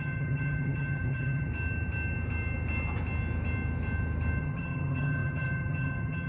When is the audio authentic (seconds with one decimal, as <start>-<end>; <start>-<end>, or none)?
1.5-4.4